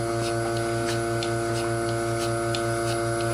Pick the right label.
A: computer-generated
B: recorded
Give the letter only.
B